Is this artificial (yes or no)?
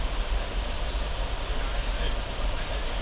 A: no